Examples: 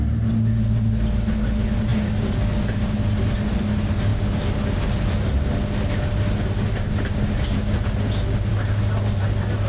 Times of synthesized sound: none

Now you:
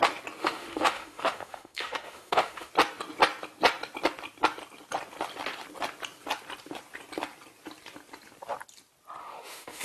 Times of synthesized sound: 0.4-2.7 (autoencoder, DAC-VAE); 9.2-9.8

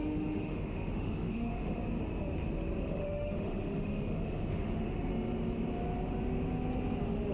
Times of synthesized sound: 0.0-1.8 (autoencoder, DAC-VAE); 2.8-5.1

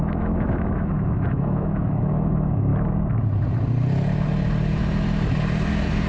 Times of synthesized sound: 0.0-2.7 (autoencoder, DAC-VAE)

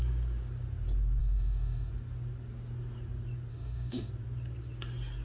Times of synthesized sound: 1.2-1.9 (autoencoder, DAC-VAE); 3.5-4.1

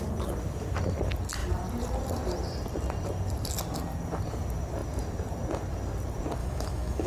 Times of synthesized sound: 6.4-7.1 (autoencoder, DAC-VAE)

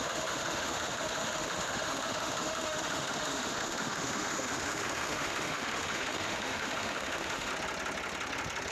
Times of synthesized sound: 0.0-7.5 (autoencoder, DAC-VAE)

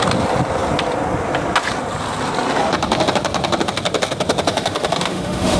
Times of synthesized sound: 4.5-5.6 (autoencoder, DAC-VAE)